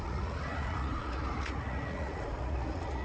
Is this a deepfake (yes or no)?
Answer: yes